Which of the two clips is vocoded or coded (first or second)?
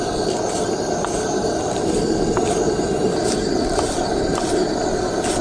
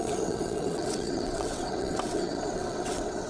second